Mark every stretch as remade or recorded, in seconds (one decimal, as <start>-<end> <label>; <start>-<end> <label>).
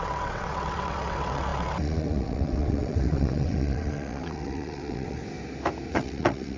0.0-5.2 remade; 5.2-5.9 recorded; 5.9-6.6 remade